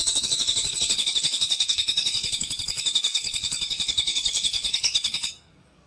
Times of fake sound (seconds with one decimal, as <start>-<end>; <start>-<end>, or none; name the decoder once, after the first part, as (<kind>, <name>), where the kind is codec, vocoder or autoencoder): 0.0-5.9 (codec, DAC)